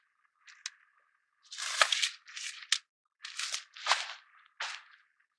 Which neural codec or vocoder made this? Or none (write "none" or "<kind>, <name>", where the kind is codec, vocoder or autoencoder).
none